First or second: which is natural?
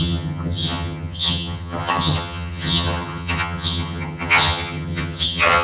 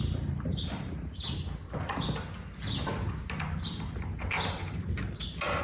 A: second